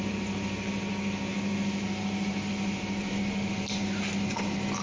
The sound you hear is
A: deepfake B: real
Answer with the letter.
B